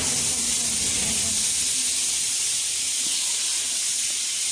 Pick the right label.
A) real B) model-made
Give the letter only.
A